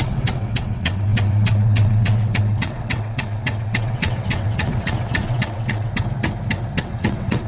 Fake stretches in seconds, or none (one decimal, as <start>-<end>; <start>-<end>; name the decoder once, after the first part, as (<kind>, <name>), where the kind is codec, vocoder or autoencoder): 0.0-5.9 (vocoder, WaveNeXt); 6.8-7.5